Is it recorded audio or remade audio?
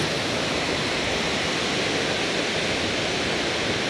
recorded